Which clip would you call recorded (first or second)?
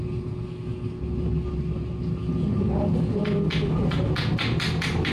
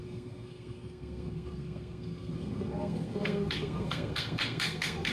first